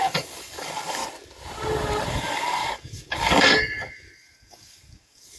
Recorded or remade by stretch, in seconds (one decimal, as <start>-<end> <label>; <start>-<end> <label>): 0.0-1.0 remade; 1.0-2.1 recorded; 2.1-5.4 remade